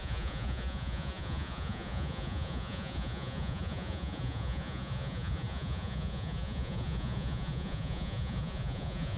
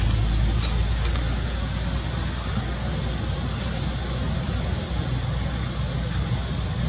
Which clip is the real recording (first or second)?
second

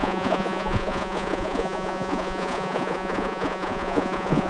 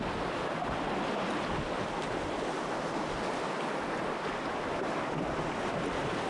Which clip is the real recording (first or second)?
second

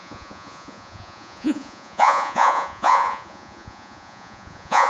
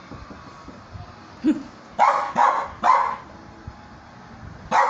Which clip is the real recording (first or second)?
second